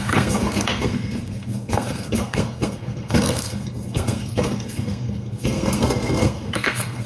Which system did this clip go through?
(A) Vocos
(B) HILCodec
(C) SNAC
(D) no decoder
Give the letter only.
C